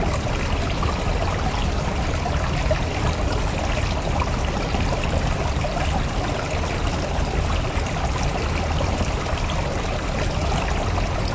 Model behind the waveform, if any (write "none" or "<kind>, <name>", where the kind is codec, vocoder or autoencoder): none